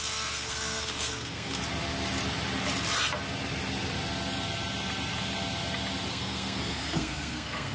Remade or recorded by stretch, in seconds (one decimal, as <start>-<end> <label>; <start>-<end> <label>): 0.0-1.6 remade; 1.6-6.1 recorded; 6.1-7.7 remade